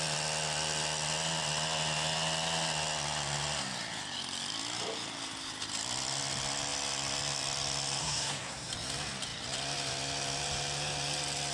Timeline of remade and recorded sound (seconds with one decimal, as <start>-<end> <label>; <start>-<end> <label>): 0.0-8.0 recorded; 8.0-8.7 remade; 8.7-11.5 recorded